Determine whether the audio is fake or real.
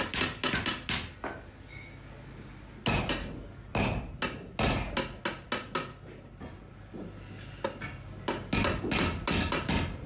real